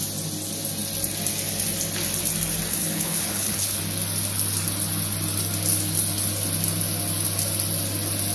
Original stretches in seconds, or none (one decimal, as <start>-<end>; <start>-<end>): 0.0-2.8; 3.8-8.3

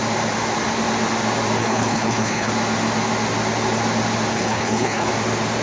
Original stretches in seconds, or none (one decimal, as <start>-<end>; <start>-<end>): 0.0-1.6; 2.5-4.3; 5.1-5.6

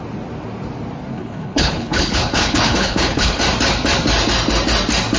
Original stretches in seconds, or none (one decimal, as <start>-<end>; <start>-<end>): 0.0-1.1; 3.4-5.2

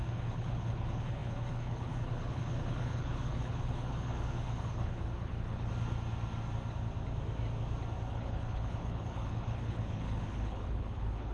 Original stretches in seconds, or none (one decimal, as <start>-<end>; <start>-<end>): 5.7-8.1

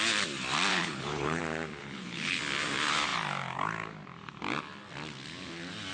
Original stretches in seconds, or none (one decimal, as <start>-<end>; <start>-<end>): 0.0-0.7; 1.4-1.8; 2.4-5.9

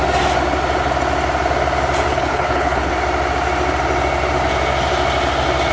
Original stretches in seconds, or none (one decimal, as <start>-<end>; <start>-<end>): 0.0-2.1; 2.9-5.7